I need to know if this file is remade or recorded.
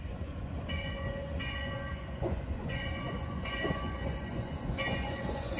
remade